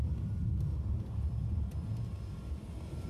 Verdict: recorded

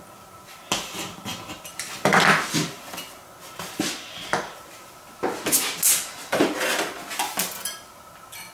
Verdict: recorded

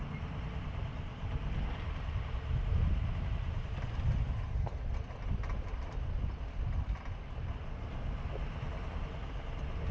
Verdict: recorded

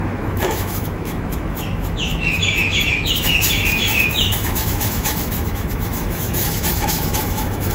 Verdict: remade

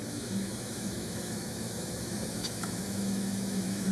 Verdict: remade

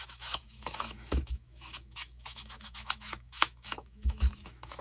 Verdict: remade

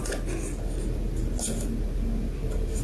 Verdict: recorded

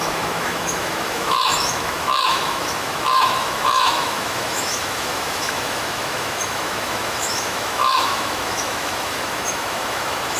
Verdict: remade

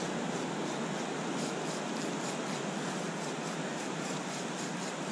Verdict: recorded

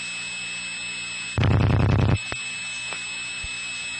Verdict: recorded